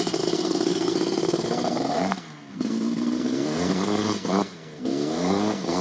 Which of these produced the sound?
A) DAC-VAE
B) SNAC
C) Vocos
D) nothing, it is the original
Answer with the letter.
B